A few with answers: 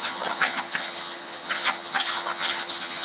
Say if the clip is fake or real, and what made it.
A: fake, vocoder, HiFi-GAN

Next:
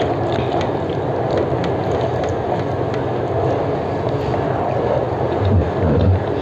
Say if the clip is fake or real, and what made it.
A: real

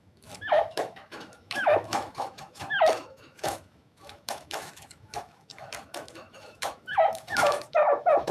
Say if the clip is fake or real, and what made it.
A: fake, autoencoder, DAC-VAE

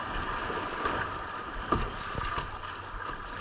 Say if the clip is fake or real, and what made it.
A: real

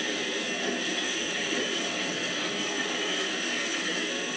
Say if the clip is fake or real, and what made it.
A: fake, codec, SNAC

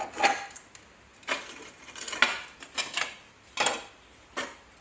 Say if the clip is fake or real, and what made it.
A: real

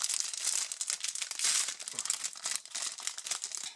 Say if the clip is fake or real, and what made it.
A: real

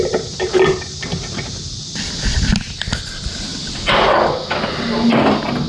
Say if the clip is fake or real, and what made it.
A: real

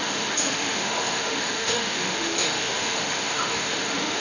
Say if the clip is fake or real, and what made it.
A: fake, autoencoder, DAC-VAE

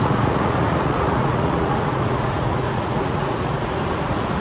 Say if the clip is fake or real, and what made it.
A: fake, vocoder, Vocos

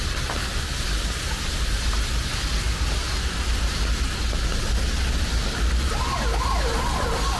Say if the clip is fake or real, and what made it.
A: real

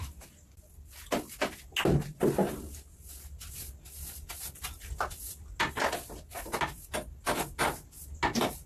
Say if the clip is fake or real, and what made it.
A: real